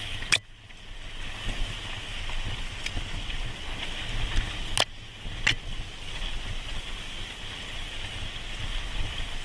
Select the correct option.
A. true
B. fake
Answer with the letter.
A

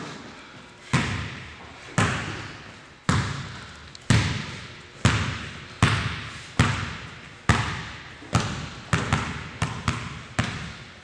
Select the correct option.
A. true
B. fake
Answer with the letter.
A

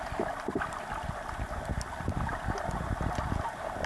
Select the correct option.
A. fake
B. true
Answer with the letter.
B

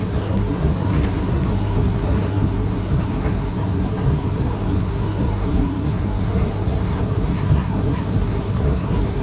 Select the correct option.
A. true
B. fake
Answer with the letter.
B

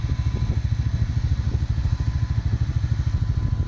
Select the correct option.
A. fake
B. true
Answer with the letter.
B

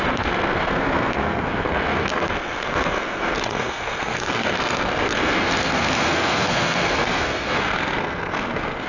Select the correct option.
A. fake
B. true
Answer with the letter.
A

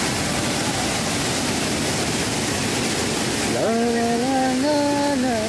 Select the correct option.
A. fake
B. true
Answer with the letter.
B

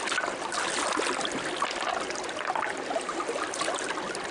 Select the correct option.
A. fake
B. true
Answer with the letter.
B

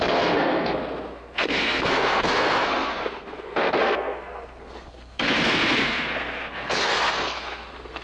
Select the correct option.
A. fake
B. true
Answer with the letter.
A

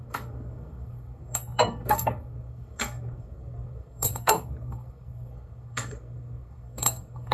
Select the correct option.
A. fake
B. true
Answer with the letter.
A